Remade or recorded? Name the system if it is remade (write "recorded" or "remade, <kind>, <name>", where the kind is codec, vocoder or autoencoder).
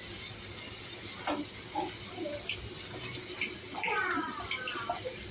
recorded